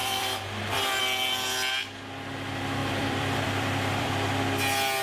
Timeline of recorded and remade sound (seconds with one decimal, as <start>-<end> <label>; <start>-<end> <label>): 0.0-1.0 remade; 1.0-2.8 recorded; 2.8-4.1 remade; 4.1-5.0 recorded